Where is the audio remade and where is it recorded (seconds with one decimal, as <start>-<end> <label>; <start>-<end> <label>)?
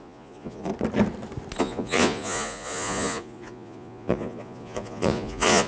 0.0-0.7 remade; 0.7-1.6 recorded; 1.6-5.7 remade